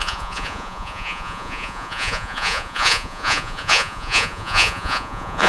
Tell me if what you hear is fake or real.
fake